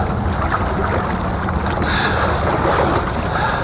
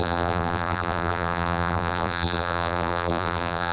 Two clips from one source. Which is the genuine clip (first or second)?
first